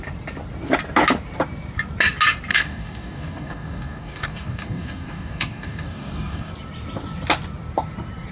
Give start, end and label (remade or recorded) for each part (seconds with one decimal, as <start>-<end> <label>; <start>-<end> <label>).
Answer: 0.0-2.5 recorded; 2.5-6.5 remade; 6.5-8.3 recorded